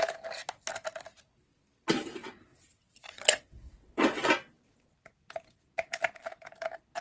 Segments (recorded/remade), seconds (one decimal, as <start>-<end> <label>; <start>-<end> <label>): 0.0-2.5 recorded; 2.5-4.3 remade; 4.3-7.0 recorded